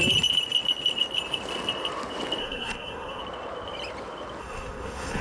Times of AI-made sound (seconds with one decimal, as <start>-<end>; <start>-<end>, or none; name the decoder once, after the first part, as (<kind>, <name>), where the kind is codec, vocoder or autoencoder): 2.4-3.2 (codec, SNAC); 4.4-5.2